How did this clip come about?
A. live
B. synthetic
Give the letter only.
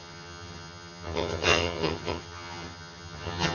B